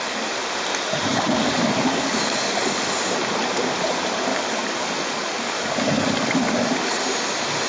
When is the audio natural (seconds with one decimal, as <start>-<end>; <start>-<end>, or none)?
0.0-1.1; 2.9-4.3; 6.8-7.7